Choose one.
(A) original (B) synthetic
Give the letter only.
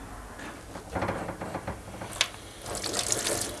A